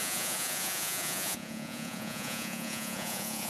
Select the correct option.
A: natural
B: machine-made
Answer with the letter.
B